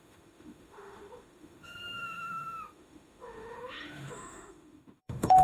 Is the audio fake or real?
fake